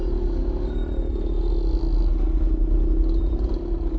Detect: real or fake real